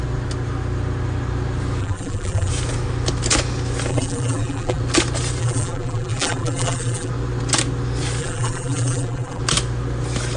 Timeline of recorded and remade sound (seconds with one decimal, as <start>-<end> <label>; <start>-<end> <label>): 0.0-1.8 recorded; 1.8-2.5 remade; 2.5-3.9 recorded; 3.9-4.8 remade; 4.8-5.4 recorded; 5.4-7.1 remade; 7.1-8.2 recorded; 8.2-9.4 remade; 9.4-10.4 recorded